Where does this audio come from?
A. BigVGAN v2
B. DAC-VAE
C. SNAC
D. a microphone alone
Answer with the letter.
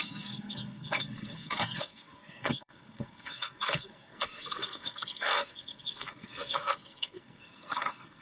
C